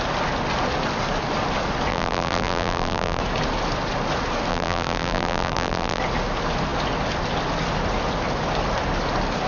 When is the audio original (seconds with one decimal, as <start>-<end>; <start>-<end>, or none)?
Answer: 0.0-1.9; 3.2-4.5; 6.0-9.5